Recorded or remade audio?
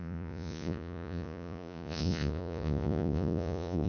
remade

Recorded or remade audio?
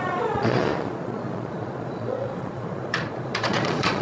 remade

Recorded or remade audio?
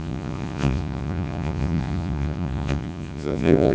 remade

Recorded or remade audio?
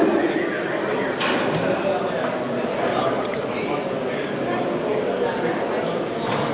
recorded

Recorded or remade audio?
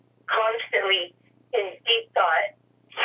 recorded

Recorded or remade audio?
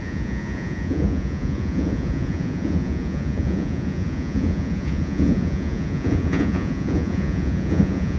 remade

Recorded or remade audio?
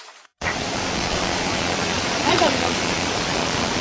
remade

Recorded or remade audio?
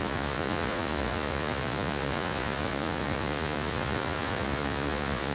remade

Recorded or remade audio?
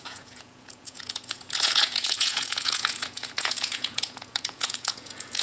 remade